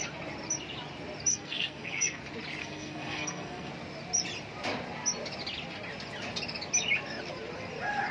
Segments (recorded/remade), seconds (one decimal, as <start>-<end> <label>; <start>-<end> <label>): 0.0-1.3 recorded; 1.3-2.2 remade; 2.2-2.6 recorded; 2.6-3.7 remade; 3.7-8.1 recorded